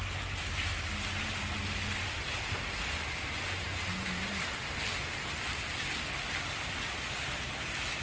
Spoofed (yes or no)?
no